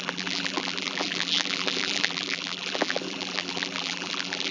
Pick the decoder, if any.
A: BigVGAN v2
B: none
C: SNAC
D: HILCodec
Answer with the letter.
A